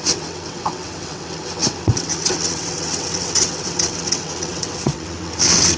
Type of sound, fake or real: fake